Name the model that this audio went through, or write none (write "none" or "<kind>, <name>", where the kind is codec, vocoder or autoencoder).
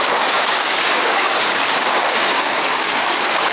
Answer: codec, DAC